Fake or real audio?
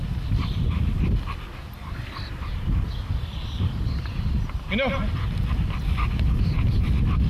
real